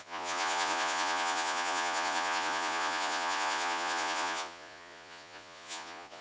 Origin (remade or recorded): remade